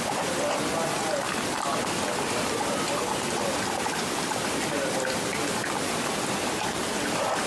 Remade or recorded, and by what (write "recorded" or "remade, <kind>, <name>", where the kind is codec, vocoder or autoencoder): recorded